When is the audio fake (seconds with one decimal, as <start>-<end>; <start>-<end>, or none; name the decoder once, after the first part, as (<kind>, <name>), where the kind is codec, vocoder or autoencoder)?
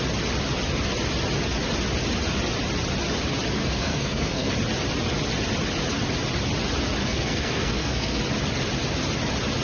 3.6-4.5 (codec, SNAC); 7.0-8.2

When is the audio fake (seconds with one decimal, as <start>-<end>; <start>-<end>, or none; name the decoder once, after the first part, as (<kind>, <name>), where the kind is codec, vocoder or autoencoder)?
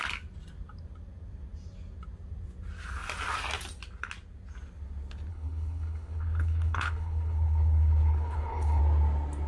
5.3-8.8 (codec, HILCodec)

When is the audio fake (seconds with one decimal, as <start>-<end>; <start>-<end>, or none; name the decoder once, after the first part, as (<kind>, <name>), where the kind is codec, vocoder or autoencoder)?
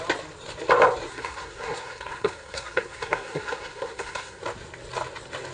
1.1-4.4 (codec, SNAC)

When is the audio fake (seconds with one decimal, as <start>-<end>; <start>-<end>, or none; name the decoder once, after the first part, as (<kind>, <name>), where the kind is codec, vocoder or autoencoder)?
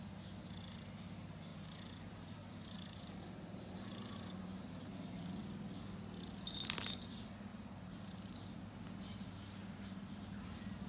1.5-5.4 (vocoder, BigVGAN v2); 7.5-8.8; 9.6-10.9